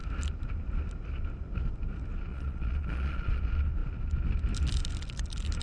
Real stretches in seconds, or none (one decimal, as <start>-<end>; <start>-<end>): 0.0-2.3; 3.4-5.6